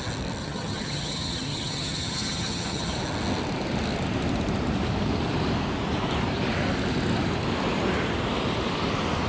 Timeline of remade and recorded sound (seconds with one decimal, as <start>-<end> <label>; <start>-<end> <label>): 0.0-0.4 recorded; 0.4-2.9 remade; 2.9-9.3 recorded